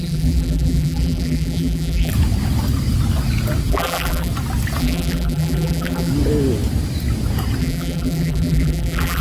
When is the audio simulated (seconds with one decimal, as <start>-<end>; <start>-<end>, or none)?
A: 0.0-2.1; 3.7-4.3; 4.8-6.1; 7.6-9.2